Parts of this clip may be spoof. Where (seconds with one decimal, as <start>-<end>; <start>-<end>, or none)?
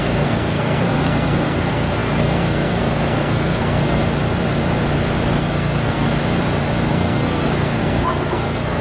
0.0-4.0; 5.4-6.1; 6.9-8.8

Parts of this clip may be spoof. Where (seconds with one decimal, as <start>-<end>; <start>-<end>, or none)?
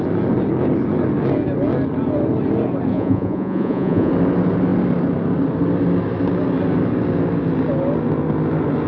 2.9-4.1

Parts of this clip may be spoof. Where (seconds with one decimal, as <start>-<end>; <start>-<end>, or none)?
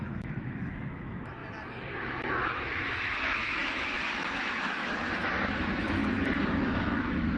0.0-1.4; 2.0-6.0; 6.5-7.4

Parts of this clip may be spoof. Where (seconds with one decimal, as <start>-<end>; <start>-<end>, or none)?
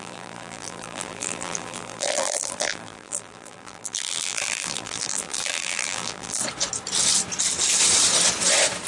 0.0-6.4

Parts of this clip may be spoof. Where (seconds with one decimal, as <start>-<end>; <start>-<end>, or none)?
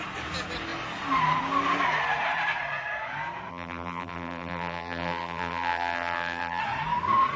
3.5-6.6